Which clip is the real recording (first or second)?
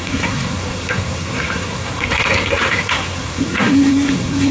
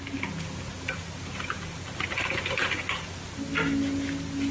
second